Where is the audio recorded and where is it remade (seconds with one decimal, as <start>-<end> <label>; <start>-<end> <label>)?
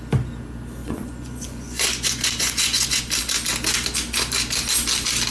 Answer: 0.0-0.8 recorded; 0.8-3.0 remade; 3.0-5.3 recorded